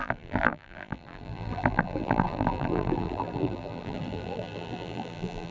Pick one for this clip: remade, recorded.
remade